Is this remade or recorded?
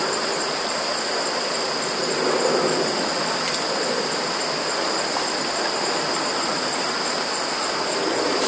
recorded